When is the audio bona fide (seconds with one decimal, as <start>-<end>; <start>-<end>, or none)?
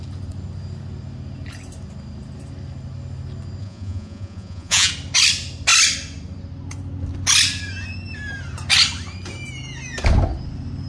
0.0-3.6; 4.9-10.9